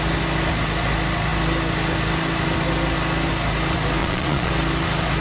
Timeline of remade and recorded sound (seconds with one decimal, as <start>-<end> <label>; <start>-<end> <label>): 0.0-4.0 recorded; 4.0-4.5 remade; 4.5-5.2 recorded